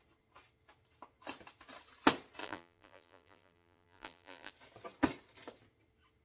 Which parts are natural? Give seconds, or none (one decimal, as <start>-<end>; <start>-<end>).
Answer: 0.0-2.4; 4.5-6.2